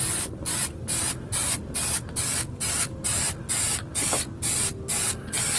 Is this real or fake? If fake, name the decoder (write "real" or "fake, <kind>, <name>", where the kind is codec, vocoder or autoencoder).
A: fake, vocoder, BigVGAN v2